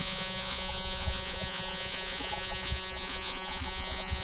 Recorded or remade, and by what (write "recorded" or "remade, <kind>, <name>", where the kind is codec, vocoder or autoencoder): remade, vocoder, Vocos